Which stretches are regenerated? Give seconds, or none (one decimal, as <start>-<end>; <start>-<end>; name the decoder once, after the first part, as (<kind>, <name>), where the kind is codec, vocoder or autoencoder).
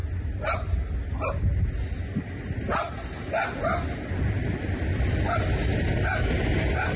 none